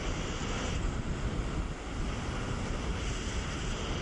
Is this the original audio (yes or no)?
yes